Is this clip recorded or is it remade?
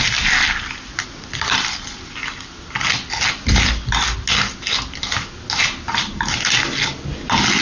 recorded